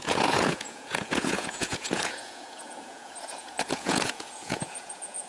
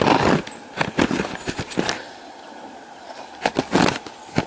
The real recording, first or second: second